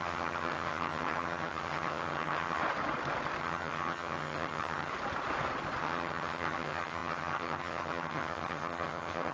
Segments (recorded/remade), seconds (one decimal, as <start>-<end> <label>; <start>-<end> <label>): 0.0-2.6 remade; 2.6-3.4 recorded; 3.4-4.9 remade; 4.9-5.8 recorded; 5.8-9.3 remade